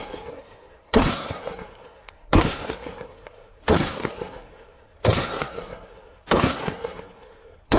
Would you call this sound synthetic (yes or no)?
yes